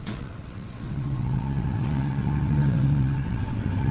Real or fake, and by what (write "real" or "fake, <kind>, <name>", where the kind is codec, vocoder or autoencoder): fake, vocoder, WaveNeXt